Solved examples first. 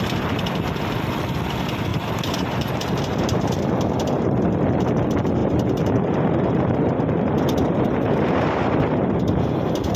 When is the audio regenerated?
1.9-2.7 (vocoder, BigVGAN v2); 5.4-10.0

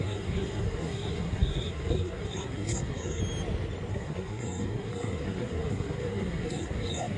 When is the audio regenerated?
0.0-3.2 (codec, SNAC); 3.9-7.2

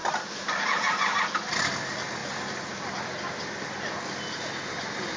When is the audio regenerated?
none

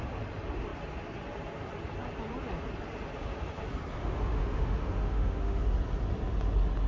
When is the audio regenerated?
4.0-5.6 (autoencoder, DAC-VAE)

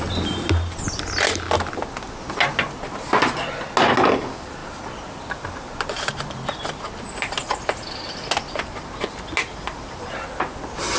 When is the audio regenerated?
none

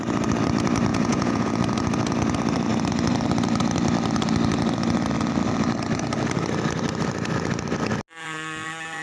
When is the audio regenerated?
0.9-1.5 (vocoder, Vocos)

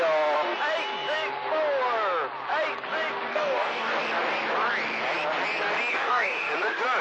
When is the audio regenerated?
3.3-3.9 (codec, DAC); 5.9-6.5